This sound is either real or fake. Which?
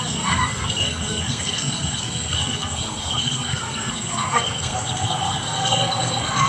fake